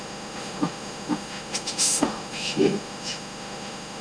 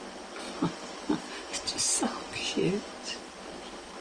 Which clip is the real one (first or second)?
second